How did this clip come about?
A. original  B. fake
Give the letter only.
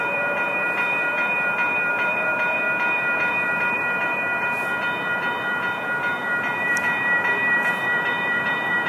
B